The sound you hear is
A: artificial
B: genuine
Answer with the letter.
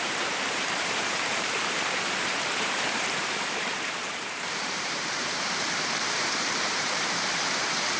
A